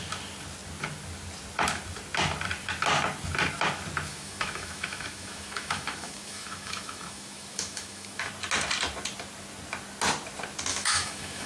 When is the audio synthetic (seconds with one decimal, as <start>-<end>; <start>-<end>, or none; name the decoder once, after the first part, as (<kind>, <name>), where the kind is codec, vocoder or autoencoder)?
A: 4.1-8.3 (autoencoder, DAC-VAE); 10.7-11.5